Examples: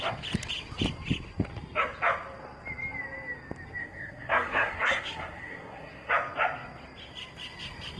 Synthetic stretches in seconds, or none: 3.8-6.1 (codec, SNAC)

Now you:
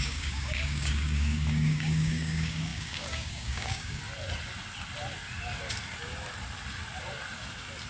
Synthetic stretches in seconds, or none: 0.0-4.0 (codec, DAC)

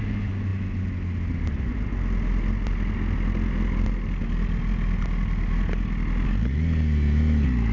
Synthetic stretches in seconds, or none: none